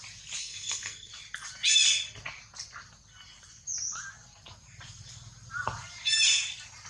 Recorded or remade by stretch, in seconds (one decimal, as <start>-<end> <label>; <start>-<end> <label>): 0.0-0.4 recorded; 0.4-1.1 remade; 1.1-6.9 recorded